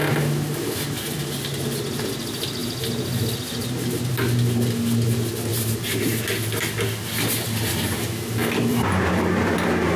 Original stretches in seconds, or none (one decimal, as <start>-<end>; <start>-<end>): 0.0-5.5; 6.2-8.7; 9.5-10.0